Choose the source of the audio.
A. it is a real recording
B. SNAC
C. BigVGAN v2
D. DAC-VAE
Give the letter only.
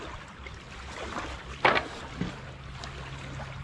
A